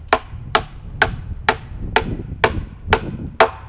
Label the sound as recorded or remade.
recorded